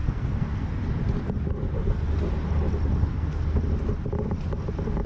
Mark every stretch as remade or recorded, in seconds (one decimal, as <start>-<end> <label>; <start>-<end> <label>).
0.0-0.7 remade; 0.7-3.0 recorded; 3.0-3.6 remade; 3.6-5.1 recorded